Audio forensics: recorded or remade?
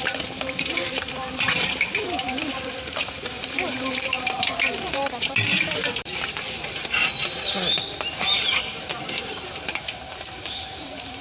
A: remade